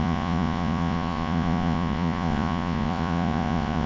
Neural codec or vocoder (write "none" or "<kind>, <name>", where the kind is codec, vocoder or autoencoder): vocoder, Vocos